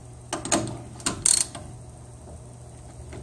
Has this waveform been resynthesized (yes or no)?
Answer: no